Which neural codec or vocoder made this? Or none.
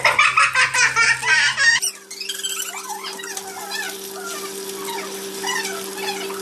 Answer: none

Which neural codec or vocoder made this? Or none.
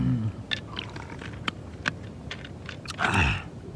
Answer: none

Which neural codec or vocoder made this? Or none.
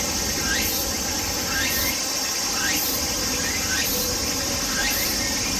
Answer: none